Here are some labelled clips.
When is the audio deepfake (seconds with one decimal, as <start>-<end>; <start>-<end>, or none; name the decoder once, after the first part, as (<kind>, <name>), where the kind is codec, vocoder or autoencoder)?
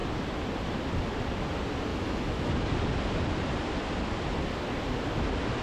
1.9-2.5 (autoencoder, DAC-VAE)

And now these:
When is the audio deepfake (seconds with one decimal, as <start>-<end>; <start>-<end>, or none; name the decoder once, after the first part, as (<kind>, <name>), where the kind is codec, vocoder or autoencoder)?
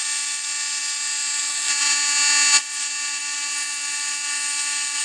none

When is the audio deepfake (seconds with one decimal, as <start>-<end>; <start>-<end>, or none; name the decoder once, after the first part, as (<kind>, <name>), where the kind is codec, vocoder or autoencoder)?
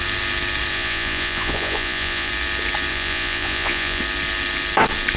0.7-2.3 (vocoder, Vocos); 2.9-4.0